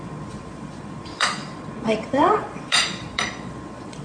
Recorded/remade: remade